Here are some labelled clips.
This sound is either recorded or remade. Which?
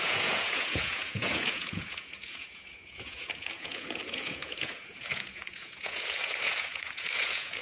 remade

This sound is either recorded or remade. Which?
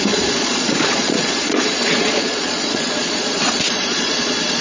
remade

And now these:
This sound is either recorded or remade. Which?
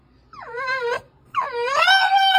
remade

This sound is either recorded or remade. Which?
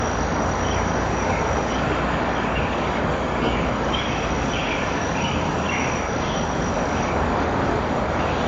remade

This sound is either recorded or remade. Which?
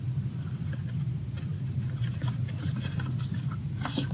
recorded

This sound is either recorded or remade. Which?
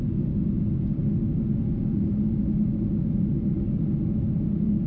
recorded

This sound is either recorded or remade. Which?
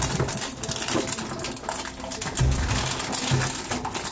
recorded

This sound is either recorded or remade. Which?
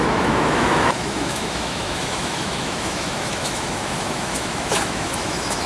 remade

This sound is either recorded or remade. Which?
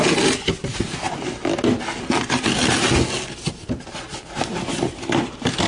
recorded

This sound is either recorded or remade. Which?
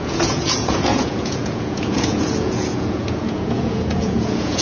remade